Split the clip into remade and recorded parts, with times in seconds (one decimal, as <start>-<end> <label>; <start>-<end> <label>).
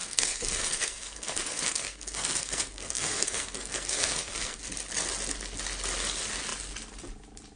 0.0-4.6 remade; 4.6-7.6 recorded